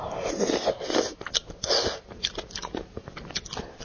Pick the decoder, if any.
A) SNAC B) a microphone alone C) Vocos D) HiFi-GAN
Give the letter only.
B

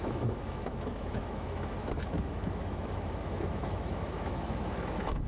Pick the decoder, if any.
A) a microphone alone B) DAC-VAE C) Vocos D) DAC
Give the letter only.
B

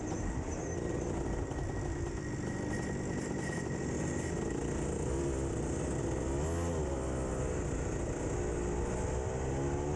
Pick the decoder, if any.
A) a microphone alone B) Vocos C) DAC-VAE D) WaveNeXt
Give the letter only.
A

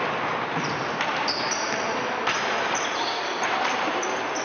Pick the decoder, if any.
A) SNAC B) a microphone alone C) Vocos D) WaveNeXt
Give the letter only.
B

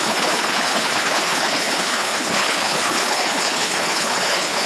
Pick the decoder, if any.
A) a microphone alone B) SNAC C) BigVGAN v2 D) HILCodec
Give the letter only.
D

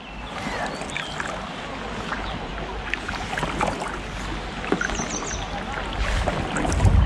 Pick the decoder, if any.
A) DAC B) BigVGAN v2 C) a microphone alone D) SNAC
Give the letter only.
C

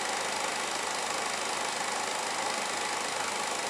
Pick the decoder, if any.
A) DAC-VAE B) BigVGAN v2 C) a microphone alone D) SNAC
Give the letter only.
C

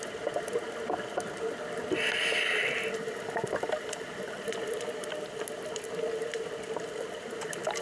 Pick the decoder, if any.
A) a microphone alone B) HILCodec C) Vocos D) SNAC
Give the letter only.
A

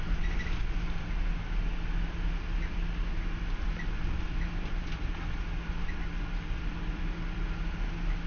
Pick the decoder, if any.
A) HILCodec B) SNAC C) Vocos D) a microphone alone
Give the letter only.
D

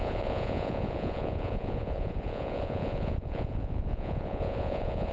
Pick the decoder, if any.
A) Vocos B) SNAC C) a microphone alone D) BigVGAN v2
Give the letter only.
A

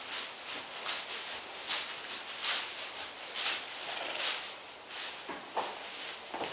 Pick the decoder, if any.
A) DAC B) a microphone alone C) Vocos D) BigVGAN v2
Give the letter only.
B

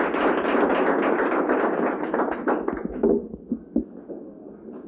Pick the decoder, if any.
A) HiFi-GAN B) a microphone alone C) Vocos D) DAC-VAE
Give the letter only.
B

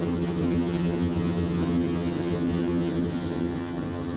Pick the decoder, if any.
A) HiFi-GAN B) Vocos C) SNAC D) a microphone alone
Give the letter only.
A